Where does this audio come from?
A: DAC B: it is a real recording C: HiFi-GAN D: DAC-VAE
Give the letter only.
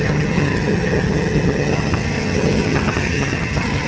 C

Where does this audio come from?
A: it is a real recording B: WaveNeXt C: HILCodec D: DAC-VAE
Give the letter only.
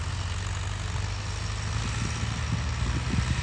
A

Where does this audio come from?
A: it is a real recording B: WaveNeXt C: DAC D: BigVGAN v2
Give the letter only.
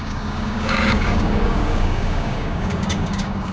C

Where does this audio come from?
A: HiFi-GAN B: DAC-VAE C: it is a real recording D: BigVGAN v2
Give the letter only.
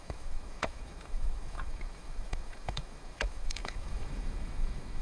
B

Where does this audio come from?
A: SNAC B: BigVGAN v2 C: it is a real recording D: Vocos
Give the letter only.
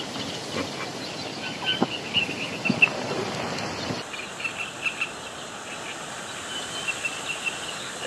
C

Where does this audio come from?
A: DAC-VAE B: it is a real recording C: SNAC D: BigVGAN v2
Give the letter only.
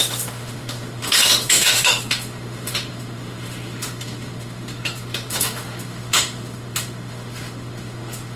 A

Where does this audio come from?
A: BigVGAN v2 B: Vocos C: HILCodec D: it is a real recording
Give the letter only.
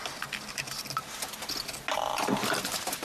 D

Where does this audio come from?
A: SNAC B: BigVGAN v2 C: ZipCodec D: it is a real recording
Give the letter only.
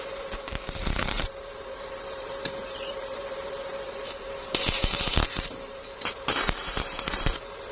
B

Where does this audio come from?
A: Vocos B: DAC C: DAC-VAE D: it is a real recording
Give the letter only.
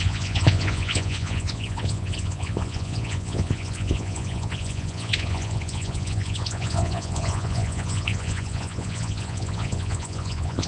A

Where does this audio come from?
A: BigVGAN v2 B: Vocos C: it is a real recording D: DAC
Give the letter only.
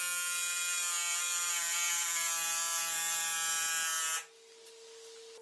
C